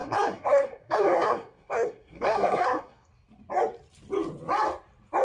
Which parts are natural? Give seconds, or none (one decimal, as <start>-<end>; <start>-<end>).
3.1-5.2